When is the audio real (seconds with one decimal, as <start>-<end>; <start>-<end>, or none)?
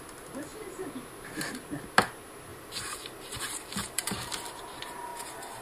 0.0-2.5; 4.0-5.1